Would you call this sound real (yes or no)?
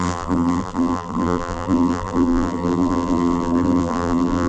no